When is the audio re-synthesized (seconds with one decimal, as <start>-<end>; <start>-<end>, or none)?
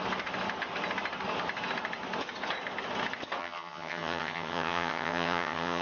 3.4-5.8